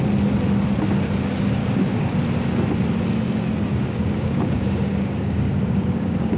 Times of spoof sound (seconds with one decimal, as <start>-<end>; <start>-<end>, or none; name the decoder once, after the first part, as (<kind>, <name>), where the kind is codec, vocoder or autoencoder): 1.6-2.1 (codec, DAC); 3.7-6.4